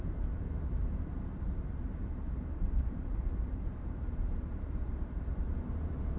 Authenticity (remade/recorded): remade